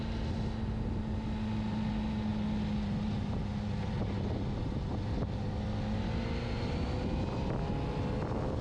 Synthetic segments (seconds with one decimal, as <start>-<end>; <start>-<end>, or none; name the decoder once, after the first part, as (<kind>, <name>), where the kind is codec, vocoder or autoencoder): none